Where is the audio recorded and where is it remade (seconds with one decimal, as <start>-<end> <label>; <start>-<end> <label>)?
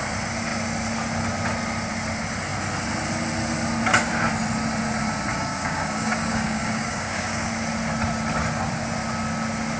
0.0-5.3 recorded; 5.3-7.5 remade; 7.5-9.8 recorded